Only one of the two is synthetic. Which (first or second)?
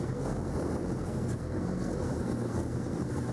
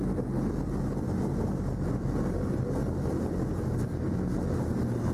first